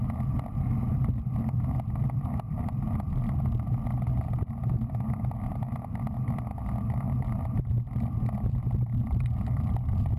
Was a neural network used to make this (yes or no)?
no